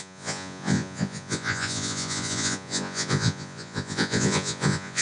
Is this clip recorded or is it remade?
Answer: remade